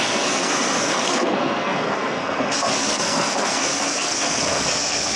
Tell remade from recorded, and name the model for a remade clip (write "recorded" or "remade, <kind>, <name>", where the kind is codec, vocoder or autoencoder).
remade, codec, SNAC